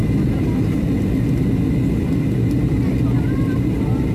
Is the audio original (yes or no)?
yes